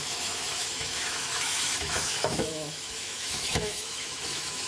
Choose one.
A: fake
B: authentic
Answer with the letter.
A